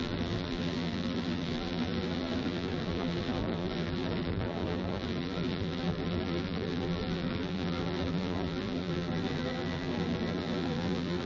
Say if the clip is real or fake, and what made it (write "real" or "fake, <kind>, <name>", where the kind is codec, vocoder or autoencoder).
fake, vocoder, BigVGAN v2